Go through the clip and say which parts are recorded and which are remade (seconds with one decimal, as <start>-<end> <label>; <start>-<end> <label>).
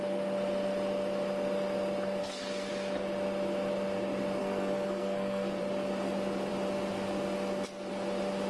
0.0-2.2 recorded; 2.2-2.7 remade; 2.7-4.4 recorded; 4.4-5.6 remade; 5.6-8.5 recorded